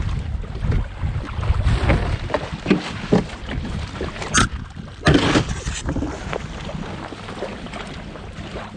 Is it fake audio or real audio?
real